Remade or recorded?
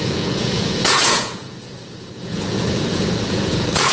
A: remade